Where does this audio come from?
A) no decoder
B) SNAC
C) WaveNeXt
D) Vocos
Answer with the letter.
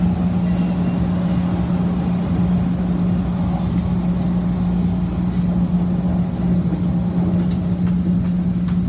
A